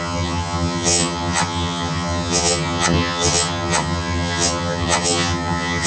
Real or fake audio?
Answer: fake